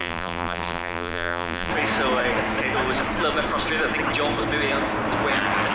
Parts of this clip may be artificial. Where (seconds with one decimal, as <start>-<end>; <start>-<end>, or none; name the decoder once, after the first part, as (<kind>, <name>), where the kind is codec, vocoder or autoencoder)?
0.0-1.7 (vocoder, BigVGAN v2)